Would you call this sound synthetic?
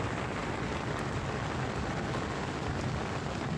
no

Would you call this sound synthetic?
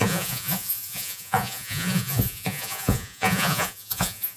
yes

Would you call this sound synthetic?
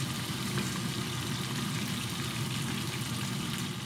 no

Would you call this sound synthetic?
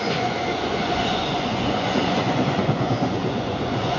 yes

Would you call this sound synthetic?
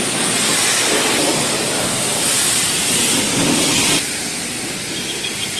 no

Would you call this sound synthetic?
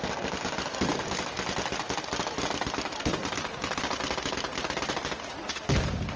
no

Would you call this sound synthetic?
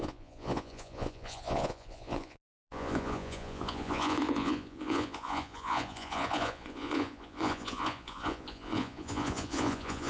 yes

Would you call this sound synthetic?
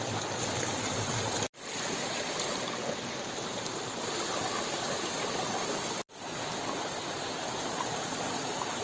no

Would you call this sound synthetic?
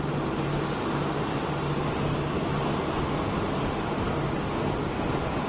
no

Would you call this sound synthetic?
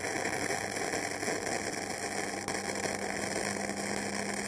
no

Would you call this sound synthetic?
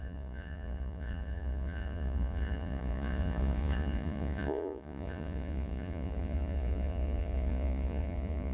yes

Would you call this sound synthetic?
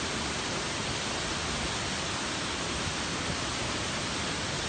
no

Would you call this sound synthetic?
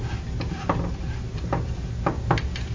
no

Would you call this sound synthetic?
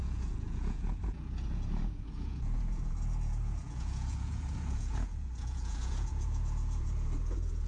yes